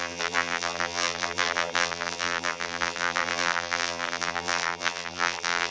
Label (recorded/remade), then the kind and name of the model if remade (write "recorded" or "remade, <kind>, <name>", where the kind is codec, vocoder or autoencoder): remade, vocoder, BigVGAN v2